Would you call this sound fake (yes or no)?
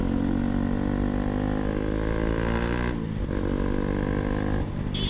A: no